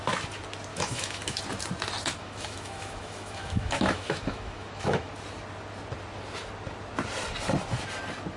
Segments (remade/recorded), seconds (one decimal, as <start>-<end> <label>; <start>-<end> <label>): 0.0-0.7 recorded; 0.7-1.4 remade; 1.4-2.2 recorded; 2.2-5.1 remade; 5.1-8.4 recorded